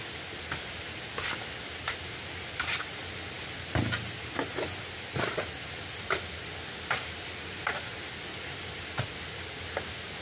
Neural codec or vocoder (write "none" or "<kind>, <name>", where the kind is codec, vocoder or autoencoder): none